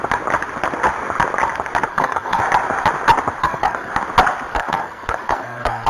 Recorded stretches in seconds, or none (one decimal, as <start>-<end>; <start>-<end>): 0.0-1.9; 2.4-3.4; 3.9-4.5

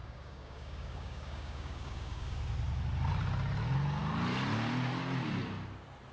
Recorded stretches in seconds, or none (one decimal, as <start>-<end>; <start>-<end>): 2.4-6.1

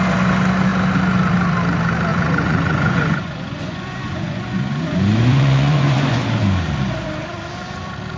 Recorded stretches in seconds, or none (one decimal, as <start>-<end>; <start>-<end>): 0.0-2.1; 6.2-8.2

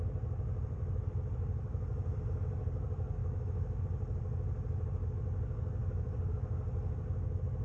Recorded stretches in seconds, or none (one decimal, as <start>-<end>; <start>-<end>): 0.0-3.2; 3.8-7.6

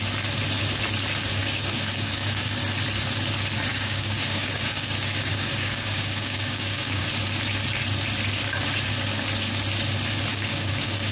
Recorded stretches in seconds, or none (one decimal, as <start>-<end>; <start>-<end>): 0.0-1.4; 2.5-3.7; 7.0-10.3

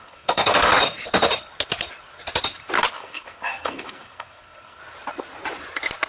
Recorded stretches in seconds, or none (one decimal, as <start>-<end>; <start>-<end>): 0.7-2.9; 4.8-6.1

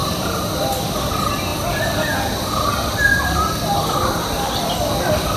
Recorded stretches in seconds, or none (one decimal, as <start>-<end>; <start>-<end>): 0.5-5.4